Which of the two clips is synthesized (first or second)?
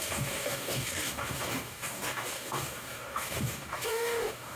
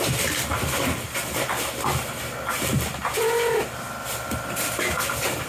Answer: first